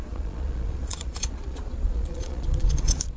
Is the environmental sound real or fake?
fake